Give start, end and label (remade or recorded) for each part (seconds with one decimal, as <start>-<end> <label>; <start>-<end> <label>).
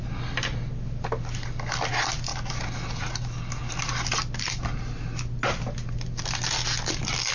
0.0-7.3 recorded